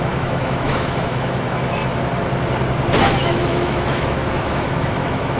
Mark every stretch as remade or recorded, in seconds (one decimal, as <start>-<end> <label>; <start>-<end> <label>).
0.0-1.8 remade; 1.8-3.2 recorded; 3.2-5.4 remade